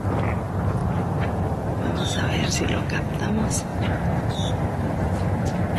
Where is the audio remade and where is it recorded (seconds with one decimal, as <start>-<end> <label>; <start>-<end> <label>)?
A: 0.0-0.8 recorded; 0.8-3.3 remade; 3.3-3.7 recorded; 3.7-5.0 remade; 5.0-5.8 recorded